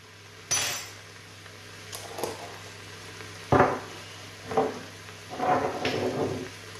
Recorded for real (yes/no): yes